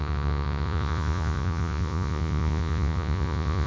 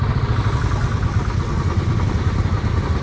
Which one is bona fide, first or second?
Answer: second